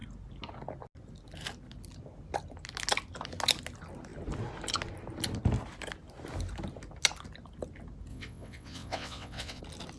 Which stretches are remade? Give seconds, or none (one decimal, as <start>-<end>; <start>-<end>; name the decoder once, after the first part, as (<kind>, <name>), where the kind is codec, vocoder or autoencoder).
8.1-9.6 (vocoder, WaveNeXt)